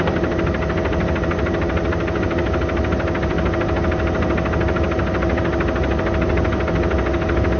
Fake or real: real